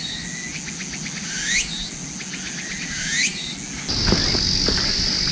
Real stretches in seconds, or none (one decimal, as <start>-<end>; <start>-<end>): 0.0-5.3